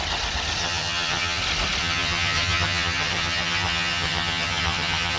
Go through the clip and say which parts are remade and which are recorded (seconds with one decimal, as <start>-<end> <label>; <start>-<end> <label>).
0.0-0.6 recorded; 0.6-1.4 remade; 1.4-1.8 recorded; 1.8-5.2 remade